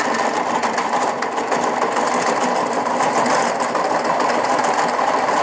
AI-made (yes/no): no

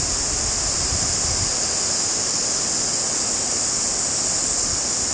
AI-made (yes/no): no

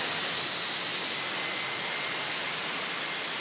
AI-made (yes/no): no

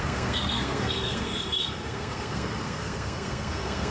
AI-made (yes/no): yes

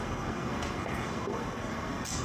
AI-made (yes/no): yes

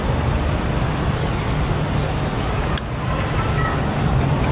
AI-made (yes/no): no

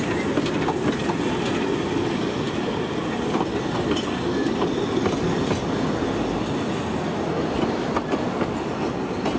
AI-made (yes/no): no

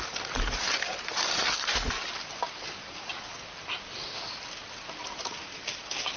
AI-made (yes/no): no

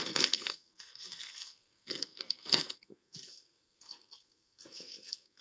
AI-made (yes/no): yes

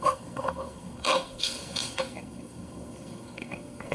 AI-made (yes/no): yes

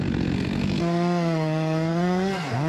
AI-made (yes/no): yes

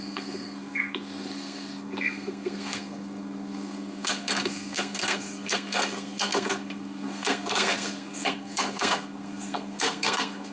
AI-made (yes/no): yes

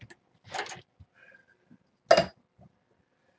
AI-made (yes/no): no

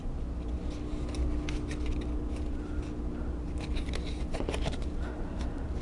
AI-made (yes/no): no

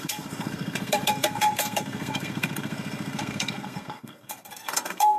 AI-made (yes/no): yes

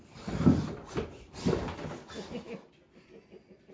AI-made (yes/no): no